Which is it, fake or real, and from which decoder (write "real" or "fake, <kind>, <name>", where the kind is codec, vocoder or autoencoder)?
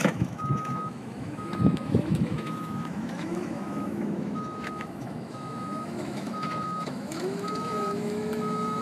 fake, autoencoder, DAC-VAE